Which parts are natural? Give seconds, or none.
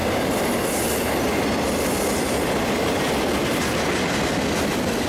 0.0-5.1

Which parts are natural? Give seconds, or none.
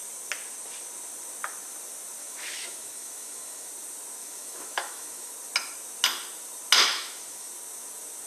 0.0-2.2; 3.7-4.2; 5.3-6.9; 7.5-8.3